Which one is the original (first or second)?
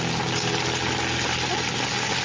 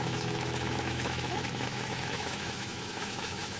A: first